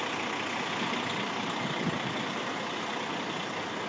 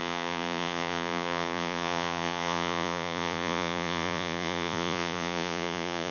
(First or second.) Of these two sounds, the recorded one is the first